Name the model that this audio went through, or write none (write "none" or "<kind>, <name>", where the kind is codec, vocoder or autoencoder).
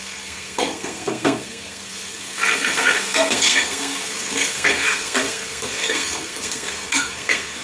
codec, SNAC